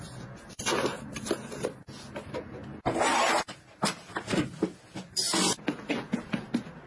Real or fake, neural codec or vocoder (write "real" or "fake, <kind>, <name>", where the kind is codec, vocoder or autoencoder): real